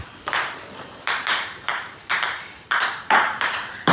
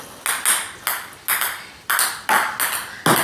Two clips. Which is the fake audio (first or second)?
first